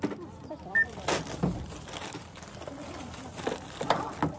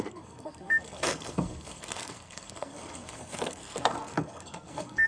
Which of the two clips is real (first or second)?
first